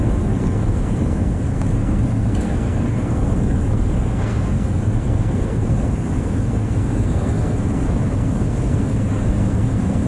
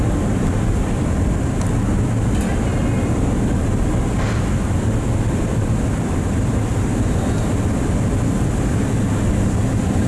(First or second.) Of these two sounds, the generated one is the first